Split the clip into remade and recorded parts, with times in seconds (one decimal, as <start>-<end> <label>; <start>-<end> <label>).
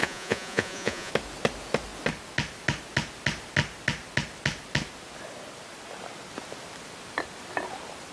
0.0-1.1 remade; 1.1-8.1 recorded